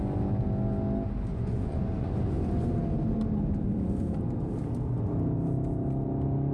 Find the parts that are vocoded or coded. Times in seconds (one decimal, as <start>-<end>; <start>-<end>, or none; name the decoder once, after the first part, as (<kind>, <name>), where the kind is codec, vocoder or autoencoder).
1.3-2.1 (vocoder, Vocos)